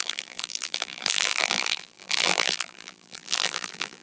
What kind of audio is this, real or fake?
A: fake